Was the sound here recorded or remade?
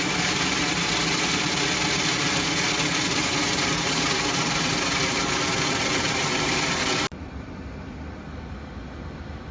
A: recorded